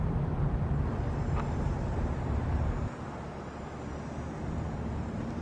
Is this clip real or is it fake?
real